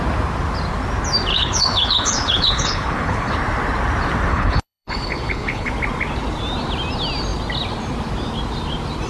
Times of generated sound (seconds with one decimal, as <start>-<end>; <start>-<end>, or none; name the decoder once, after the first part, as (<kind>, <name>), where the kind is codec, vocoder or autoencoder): 1.3-3.3 (codec, HILCodec); 4.3-5.7

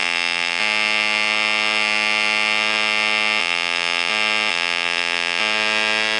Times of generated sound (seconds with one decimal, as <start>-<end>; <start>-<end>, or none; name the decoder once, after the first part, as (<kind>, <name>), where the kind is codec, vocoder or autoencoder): 0.0-0.6 (vocoder, BigVGAN v2); 3.4-4.1; 4.5-5.4

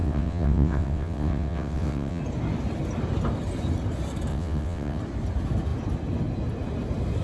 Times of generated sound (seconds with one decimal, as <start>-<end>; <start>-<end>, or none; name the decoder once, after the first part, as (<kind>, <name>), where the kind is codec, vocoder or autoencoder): 0.0-2.2 (vocoder, WaveNeXt); 4.3-5.0

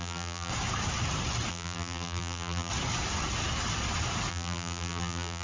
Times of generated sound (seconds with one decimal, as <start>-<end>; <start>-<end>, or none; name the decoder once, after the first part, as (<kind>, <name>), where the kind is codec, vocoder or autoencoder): 0.0-0.5 (vocoder, BigVGAN v2); 1.5-2.7; 4.3-5.4

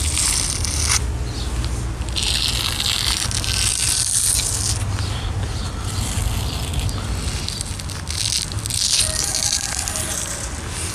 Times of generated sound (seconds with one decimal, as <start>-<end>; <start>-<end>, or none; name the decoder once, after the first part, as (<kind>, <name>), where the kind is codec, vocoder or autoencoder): none